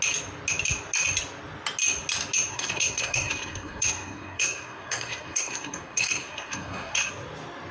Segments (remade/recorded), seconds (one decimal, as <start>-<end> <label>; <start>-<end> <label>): 0.0-2.5 recorded; 2.5-7.1 remade; 7.1-7.7 recorded